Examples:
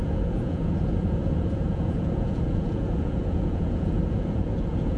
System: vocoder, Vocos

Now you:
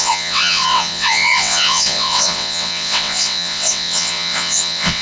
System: vocoder, WaveNeXt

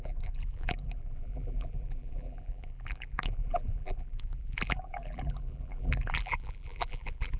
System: vocoder, BigVGAN v2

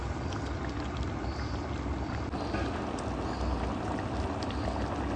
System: none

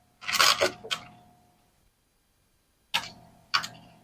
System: none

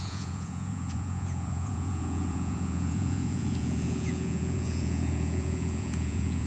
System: vocoder, Vocos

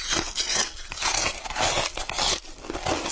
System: none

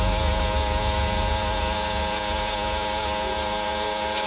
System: vocoder, Vocos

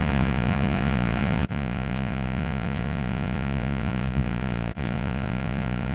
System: vocoder, Vocos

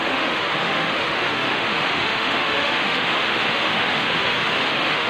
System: autoencoder, DAC-VAE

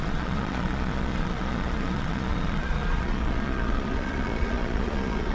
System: vocoder, Vocos